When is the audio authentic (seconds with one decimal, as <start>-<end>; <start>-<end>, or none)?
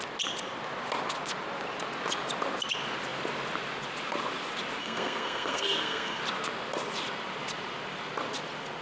0.0-4.8; 6.2-8.8